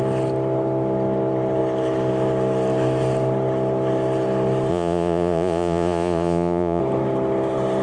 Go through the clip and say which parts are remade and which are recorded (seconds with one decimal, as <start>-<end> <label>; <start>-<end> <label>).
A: 0.0-4.7 recorded; 4.7-6.8 remade; 6.8-7.8 recorded